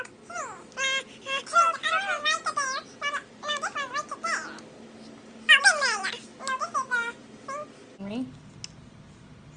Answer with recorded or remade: recorded